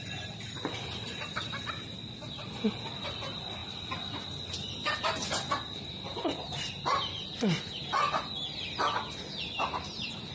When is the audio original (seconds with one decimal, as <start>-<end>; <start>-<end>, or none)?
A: 0.0-10.3